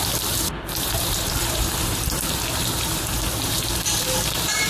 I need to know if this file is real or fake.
fake